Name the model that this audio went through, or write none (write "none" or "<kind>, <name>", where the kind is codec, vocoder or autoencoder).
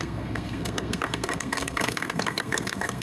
codec, SNAC